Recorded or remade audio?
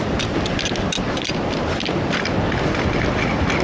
recorded